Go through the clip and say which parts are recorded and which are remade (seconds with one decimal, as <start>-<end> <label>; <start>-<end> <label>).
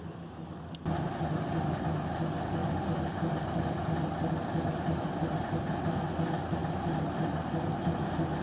0.0-8.4 recorded